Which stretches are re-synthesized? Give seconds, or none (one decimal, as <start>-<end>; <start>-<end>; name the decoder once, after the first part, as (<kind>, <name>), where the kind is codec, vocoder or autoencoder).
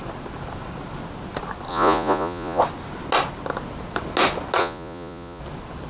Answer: 1.7-2.6 (vocoder, Vocos); 4.6-5.4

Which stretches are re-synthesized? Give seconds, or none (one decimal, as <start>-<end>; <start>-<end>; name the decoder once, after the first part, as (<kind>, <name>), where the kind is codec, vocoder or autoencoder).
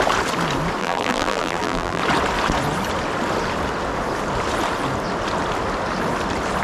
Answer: 0.8-2.0 (vocoder, BigVGAN v2)